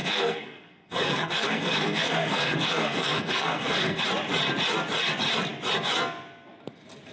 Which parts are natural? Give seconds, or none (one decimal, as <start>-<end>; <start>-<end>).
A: 4.0-7.1